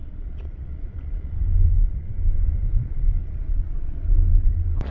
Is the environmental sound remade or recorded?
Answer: remade